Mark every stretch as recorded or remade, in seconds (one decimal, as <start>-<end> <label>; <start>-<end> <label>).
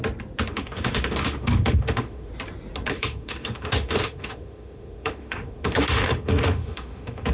0.0-0.5 recorded; 0.5-2.3 remade; 2.3-2.9 recorded; 2.9-7.3 remade